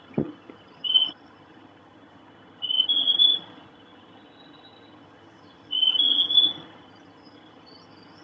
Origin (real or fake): fake